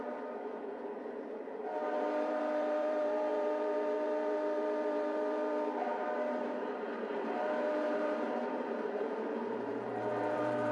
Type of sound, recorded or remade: remade